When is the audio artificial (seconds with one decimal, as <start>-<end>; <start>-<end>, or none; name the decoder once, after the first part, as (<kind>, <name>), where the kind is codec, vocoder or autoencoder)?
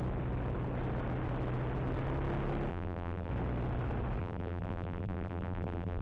2.7-3.3 (vocoder, BigVGAN v2); 4.2-6.0